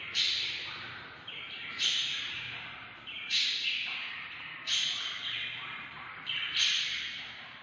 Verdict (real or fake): fake